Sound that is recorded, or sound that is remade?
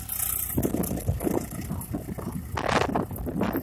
recorded